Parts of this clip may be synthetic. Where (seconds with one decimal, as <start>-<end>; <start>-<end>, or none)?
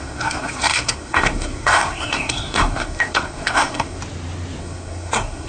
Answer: 0.0-4.0; 4.6-5.5